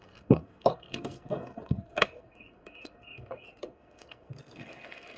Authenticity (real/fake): fake